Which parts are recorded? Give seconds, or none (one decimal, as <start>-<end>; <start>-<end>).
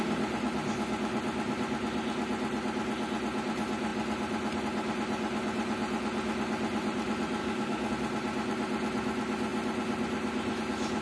0.0-7.4; 7.9-11.0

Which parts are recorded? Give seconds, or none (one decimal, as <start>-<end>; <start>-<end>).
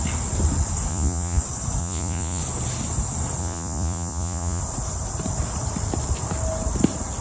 0.0-0.9; 1.4-1.8; 2.4-3.4; 4.6-7.2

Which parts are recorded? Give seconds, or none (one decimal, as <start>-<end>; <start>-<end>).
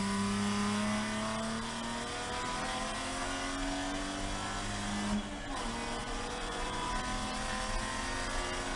0.0-6.0; 6.9-8.8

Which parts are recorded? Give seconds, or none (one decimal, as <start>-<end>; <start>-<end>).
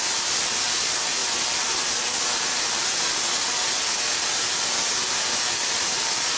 0.0-6.4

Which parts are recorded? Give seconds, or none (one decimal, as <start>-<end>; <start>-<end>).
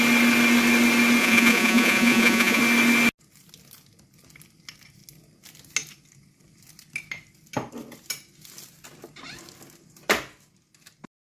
0.0-1.2; 2.6-11.3